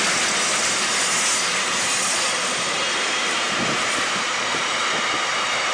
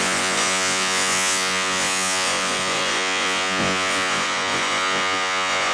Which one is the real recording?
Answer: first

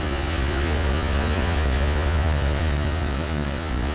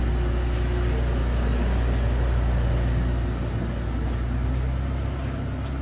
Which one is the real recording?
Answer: second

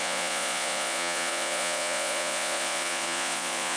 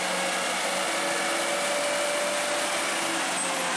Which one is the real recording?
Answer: second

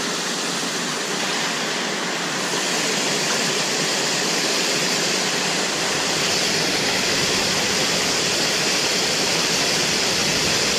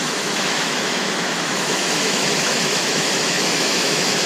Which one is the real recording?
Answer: first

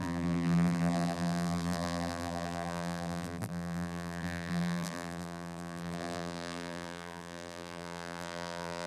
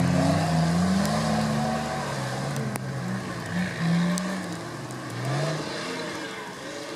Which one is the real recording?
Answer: second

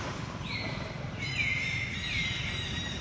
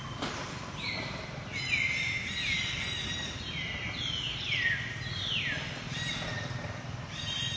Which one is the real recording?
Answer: second